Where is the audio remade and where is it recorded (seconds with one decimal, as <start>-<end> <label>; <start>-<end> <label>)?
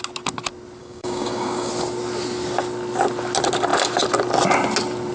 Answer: 0.0-0.8 recorded; 0.8-1.7 remade; 1.7-5.1 recorded